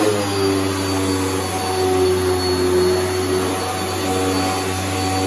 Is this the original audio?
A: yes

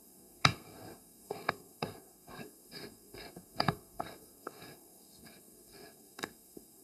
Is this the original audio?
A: no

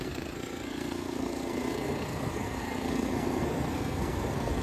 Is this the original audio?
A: no